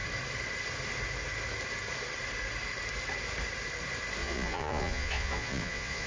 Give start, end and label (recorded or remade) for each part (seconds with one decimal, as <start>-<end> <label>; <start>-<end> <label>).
0.0-4.2 recorded; 4.2-6.1 remade